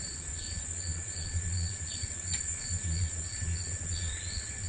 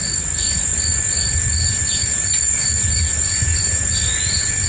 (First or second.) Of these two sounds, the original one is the second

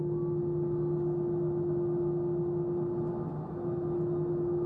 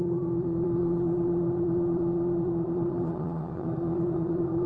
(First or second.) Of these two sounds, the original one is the first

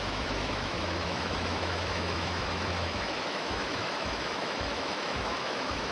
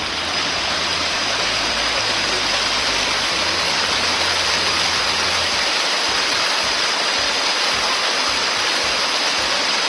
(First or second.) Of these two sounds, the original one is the second